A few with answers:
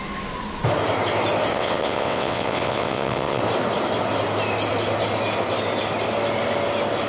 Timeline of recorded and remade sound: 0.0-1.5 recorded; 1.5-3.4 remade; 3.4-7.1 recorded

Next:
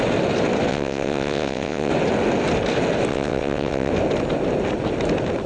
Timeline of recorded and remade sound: 0.0-0.7 recorded; 0.7-1.9 remade; 1.9-3.1 recorded; 3.1-3.9 remade; 3.9-5.5 recorded

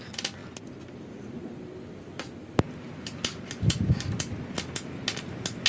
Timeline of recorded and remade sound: 0.0-5.7 recorded

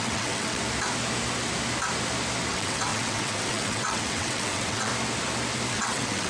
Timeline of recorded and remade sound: 0.0-0.6 remade; 0.6-2.5 recorded; 2.5-4.9 remade; 4.9-5.7 recorded; 5.7-6.3 remade